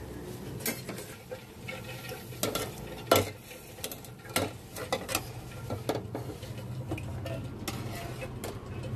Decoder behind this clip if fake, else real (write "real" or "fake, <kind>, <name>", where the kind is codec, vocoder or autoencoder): real